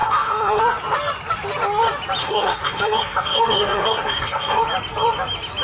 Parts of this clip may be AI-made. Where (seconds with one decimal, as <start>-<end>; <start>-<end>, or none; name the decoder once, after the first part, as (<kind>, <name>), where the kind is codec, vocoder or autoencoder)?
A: 0.0-0.6 (codec, SNAC); 2.2-4.6